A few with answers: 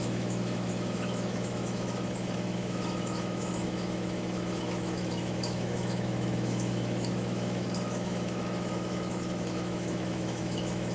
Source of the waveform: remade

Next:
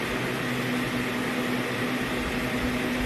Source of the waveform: recorded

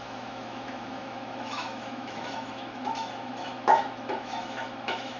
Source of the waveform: remade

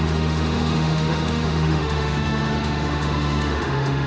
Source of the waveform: remade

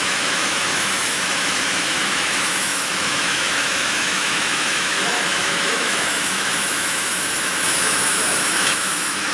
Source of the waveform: remade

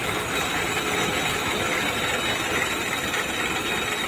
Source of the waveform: recorded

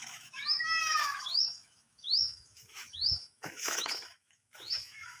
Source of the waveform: remade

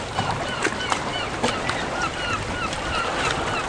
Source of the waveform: recorded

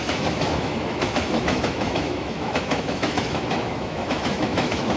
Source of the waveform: remade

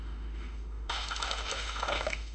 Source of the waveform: remade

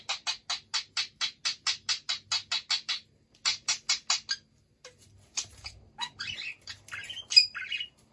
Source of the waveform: recorded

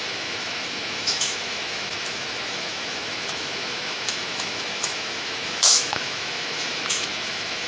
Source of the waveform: remade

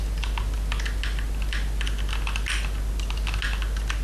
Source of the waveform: recorded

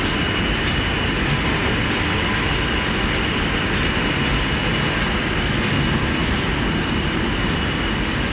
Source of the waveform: recorded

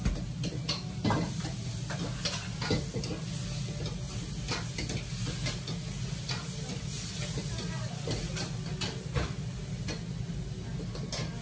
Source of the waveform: recorded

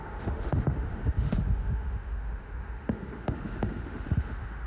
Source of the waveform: remade